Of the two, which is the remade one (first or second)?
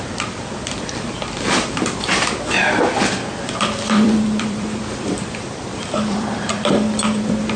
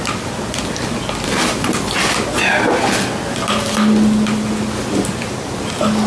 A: first